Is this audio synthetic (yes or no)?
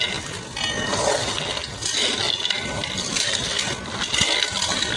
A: no